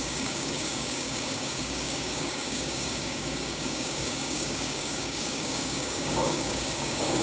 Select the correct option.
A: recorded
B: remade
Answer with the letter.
B